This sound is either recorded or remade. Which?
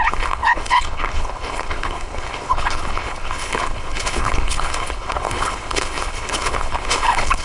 remade